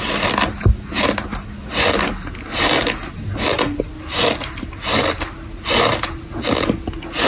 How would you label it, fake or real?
real